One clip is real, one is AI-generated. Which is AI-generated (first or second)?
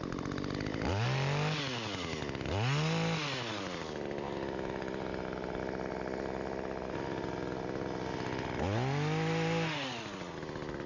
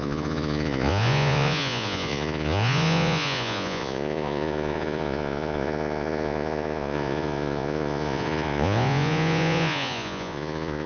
second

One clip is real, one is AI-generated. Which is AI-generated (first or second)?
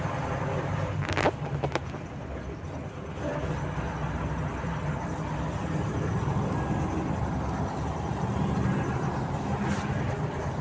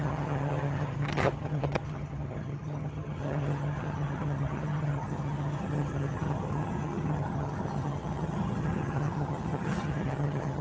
second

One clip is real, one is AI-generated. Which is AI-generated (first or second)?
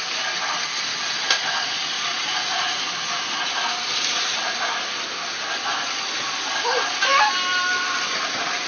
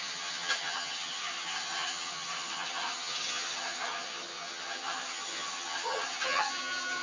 second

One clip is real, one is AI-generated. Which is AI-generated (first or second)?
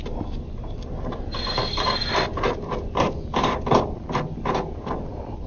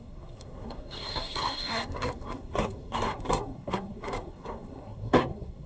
second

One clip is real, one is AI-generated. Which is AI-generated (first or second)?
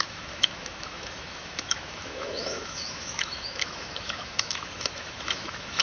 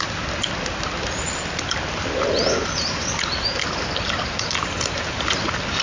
first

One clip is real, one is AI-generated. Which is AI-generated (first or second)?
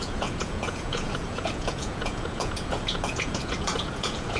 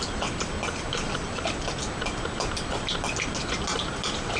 first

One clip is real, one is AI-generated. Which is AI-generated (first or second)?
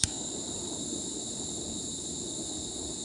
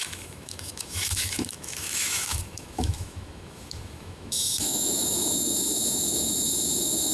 second